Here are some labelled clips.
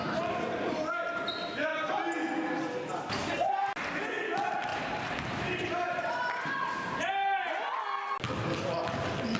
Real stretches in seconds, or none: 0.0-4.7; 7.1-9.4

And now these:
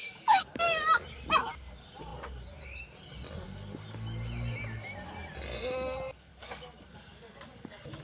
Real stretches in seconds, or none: 0.6-6.3

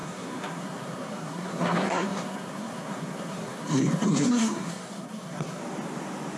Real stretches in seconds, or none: 5.6-6.4

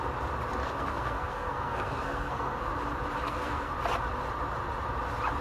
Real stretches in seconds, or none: 0.0-0.6; 2.7-3.2; 3.7-5.4

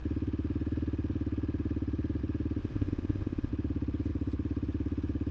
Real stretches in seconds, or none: 0.0-2.6; 3.5-5.3

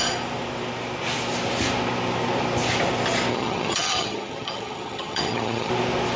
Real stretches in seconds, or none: 0.0-3.3; 5.7-6.2